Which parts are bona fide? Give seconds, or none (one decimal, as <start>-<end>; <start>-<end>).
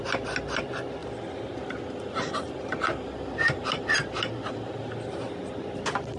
0.0-6.2